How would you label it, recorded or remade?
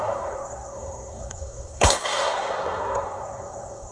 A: remade